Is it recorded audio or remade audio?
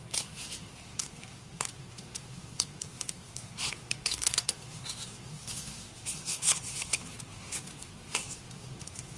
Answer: remade